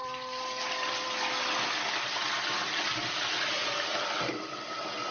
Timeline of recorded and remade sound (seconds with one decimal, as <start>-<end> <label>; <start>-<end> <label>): 0.0-1.9 remade; 1.9-2.6 recorded; 2.6-4.6 remade; 4.6-5.1 recorded